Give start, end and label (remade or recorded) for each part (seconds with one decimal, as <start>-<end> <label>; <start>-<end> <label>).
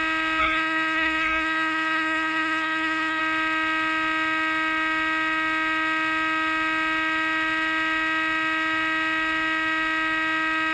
0.0-0.4 recorded; 0.4-3.2 remade; 3.2-10.7 recorded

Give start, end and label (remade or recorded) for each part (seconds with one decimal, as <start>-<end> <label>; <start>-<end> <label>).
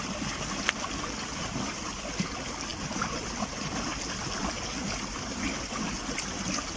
0.0-6.8 recorded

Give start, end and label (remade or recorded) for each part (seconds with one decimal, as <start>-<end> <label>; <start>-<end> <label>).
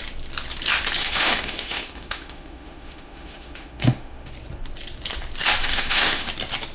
0.0-1.0 recorded; 1.0-4.3 remade; 4.3-5.6 recorded; 5.6-6.3 remade; 6.3-6.7 recorded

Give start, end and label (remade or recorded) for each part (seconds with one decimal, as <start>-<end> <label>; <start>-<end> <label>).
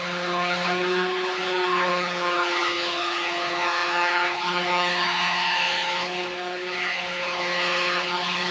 0.0-8.5 remade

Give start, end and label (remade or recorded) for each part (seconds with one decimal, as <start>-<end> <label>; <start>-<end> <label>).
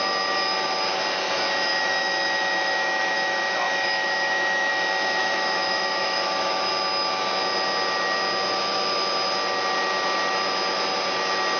0.0-1.7 recorded; 1.7-4.7 remade; 4.7-5.2 recorded; 5.2-6.7 remade; 6.7-11.6 recorded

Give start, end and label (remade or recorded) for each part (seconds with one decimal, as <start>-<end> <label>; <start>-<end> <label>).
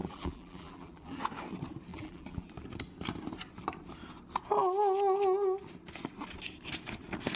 0.0-1.2 remade; 1.2-1.9 recorded; 1.9-2.5 remade; 2.5-7.4 recorded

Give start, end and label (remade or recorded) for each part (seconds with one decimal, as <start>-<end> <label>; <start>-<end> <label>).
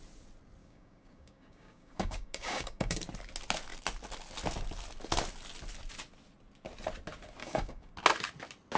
0.0-0.6 recorded; 0.6-3.0 remade; 3.0-7.4 recorded; 7.4-7.9 remade; 7.9-8.8 recorded